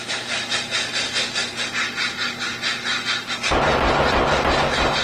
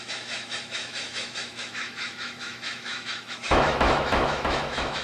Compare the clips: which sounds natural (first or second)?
first